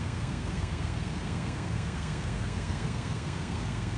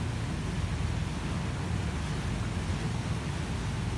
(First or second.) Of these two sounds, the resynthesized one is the first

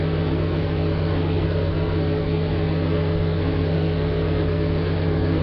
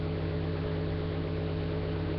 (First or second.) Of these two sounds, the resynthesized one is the first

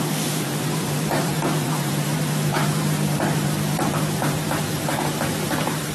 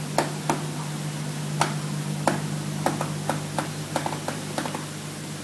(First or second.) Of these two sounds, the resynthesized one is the first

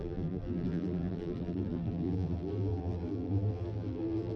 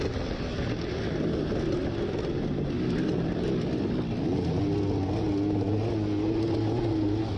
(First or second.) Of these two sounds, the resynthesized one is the first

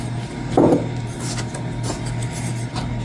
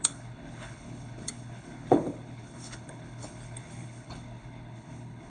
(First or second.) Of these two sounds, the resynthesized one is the second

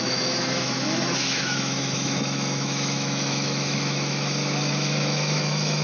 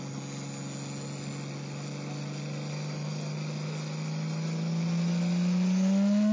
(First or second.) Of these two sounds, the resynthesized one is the first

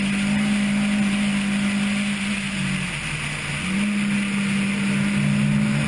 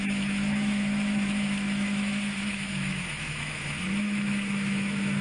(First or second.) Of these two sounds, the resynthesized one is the second